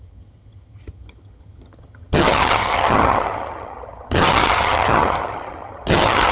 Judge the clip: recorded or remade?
remade